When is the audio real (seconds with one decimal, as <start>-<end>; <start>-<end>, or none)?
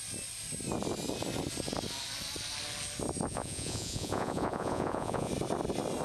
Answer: 0.0-3.3; 5.3-6.0